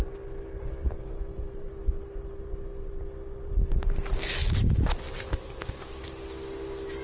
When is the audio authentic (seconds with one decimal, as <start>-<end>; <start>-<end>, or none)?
0.0-7.0